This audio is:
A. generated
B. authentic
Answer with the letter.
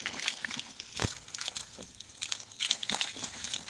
A